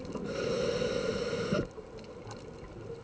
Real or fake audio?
real